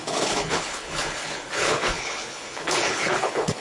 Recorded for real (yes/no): no